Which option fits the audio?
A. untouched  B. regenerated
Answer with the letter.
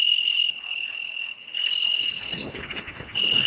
B